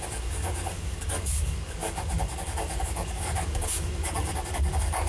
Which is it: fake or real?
fake